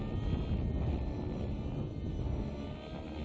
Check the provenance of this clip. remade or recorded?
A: recorded